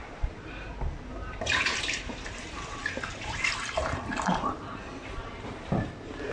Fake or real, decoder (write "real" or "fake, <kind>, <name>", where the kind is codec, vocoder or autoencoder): fake, vocoder, BigVGAN v2